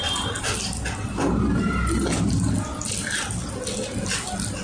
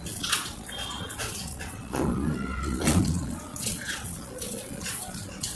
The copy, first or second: second